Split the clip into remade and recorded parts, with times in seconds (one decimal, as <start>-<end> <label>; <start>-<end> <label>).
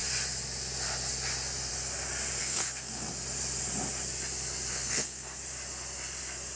0.0-2.4 recorded; 2.4-3.1 remade; 3.1-4.7 recorded; 4.7-5.4 remade; 5.4-6.6 recorded